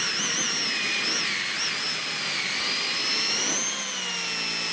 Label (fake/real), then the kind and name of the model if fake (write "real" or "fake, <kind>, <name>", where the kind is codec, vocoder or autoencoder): real